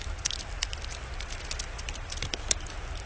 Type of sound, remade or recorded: recorded